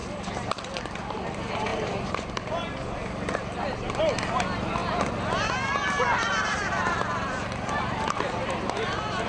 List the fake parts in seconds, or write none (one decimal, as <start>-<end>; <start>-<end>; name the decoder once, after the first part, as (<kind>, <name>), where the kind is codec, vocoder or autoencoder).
0.8-9.3 (vocoder, BigVGAN v2)